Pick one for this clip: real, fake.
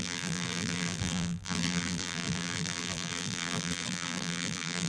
fake